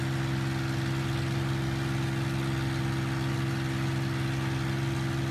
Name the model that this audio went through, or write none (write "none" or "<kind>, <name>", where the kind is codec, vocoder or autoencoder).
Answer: none